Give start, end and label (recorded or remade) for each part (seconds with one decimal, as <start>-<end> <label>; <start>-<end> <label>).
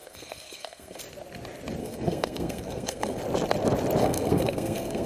0.0-1.0 remade; 1.0-1.8 recorded; 1.8-3.2 remade; 3.2-4.0 recorded; 4.0-5.1 remade